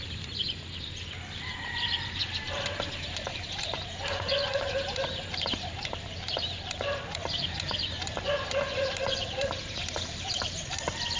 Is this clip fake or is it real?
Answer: fake